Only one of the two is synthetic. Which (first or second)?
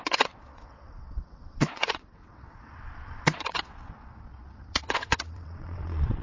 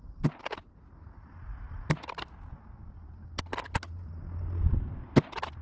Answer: first